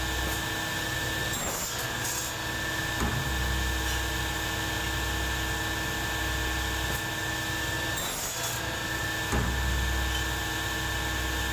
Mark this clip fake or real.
real